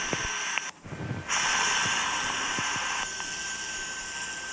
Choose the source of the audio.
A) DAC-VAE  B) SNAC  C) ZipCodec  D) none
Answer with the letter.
D